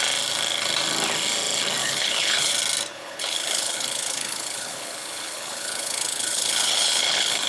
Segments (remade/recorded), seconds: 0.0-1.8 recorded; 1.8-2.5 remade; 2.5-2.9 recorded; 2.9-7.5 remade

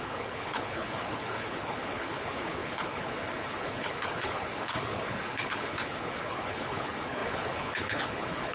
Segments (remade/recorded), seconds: 0.0-8.5 remade

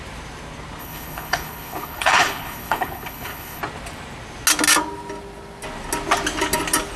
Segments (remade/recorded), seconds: 0.0-0.8 recorded; 0.8-3.6 remade; 3.6-7.0 recorded

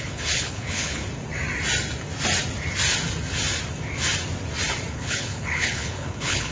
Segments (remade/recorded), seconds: 0.0-1.0 remade; 1.0-4.9 recorded; 4.9-6.5 remade

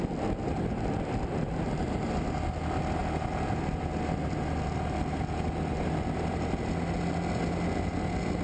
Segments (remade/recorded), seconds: 0.0-8.4 recorded

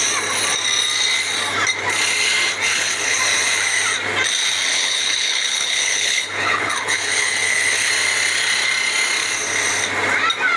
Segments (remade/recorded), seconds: 0.0-2.7 recorded; 2.7-3.2 remade; 3.2-4.7 recorded; 4.7-7.9 remade; 7.9-10.6 recorded